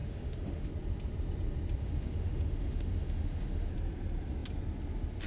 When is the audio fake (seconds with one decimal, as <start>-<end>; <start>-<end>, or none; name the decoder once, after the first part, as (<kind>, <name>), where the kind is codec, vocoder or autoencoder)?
0.0-0.7 (autoencoder, DAC-VAE); 1.8-3.7